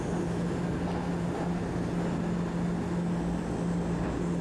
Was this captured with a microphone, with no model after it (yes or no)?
yes